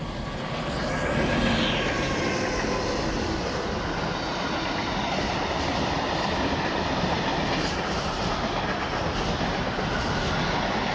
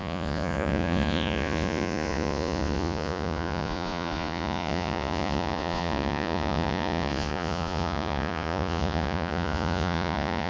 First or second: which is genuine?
first